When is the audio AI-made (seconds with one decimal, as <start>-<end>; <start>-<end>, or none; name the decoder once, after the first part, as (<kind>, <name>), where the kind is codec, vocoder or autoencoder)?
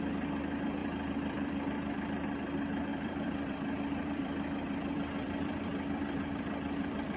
0.8-1.9 (vocoder, BigVGAN v2); 2.9-7.2